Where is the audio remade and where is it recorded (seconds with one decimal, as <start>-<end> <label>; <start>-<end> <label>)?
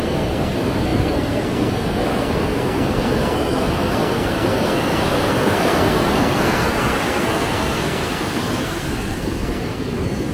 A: 0.0-10.3 remade